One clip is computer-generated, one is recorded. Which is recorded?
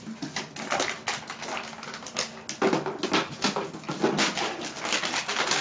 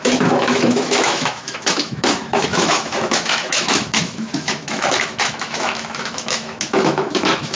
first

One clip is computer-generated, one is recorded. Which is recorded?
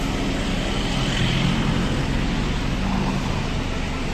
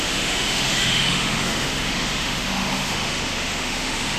first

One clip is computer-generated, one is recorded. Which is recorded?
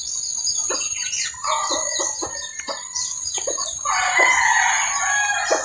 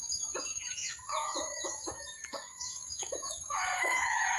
first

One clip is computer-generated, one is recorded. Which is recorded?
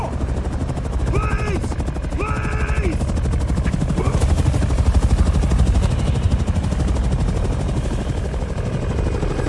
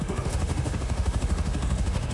first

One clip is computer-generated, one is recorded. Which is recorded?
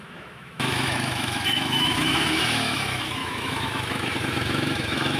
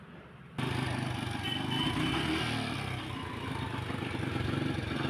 second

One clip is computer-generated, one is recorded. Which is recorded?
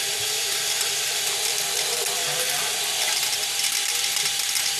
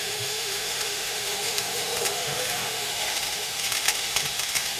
first